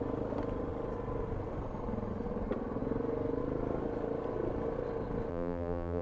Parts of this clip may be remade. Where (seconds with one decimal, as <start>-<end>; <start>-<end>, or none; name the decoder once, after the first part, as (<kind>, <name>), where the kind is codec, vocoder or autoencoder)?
5.3-6.0 (vocoder, BigVGAN v2)